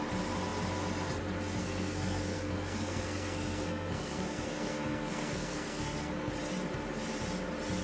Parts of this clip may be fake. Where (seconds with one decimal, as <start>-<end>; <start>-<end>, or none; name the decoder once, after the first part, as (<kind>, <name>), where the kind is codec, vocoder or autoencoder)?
1.6-6.3 (codec, SNAC)

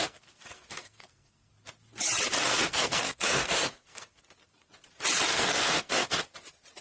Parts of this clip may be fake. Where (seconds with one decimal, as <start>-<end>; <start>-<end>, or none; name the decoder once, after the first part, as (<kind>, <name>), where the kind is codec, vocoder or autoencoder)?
0.0-1.5 (codec, SNAC); 2.5-4.2; 5.3-6.2

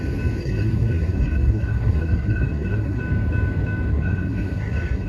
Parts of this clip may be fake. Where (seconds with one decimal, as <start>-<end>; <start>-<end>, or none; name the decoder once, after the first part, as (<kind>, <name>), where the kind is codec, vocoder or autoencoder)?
0.4-3.0 (codec, SNAC); 3.9-5.1